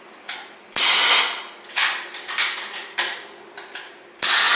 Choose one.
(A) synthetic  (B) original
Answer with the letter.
B